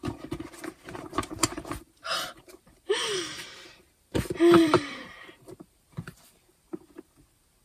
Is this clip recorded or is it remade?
remade